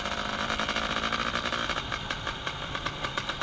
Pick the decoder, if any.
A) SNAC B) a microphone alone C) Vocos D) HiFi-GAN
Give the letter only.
B